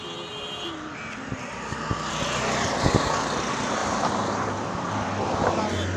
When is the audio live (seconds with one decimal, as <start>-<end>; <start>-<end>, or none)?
0.0-6.0